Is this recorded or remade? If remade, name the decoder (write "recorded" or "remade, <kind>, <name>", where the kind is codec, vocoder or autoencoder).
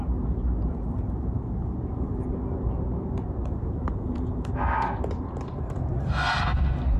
recorded